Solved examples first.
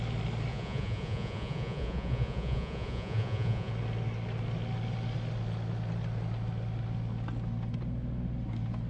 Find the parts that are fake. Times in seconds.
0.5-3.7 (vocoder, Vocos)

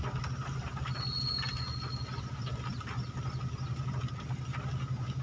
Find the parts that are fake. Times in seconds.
none

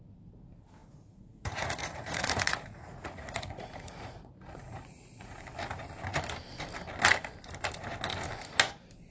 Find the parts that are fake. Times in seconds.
0.8-5.4 (vocoder, Vocos)

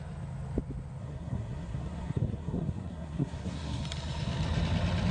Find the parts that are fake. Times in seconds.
1.0-3.8 (codec, SNAC)